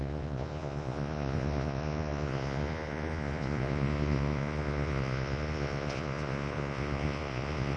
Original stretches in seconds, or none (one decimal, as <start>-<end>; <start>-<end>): none